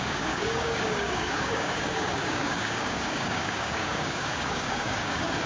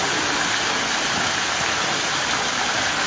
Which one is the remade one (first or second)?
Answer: first